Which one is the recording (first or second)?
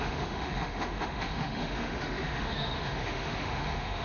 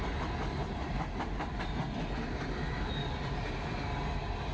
second